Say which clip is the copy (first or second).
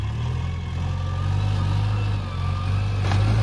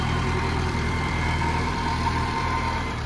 second